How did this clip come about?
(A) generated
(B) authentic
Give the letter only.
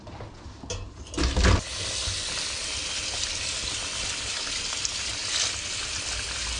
B